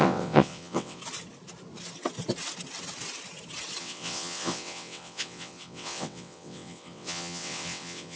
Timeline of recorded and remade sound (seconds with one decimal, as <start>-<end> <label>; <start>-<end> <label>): 0.0-1.0 remade; 1.0-3.8 recorded; 3.8-8.2 remade